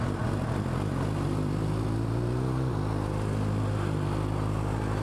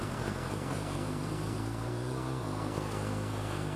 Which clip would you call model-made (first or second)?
second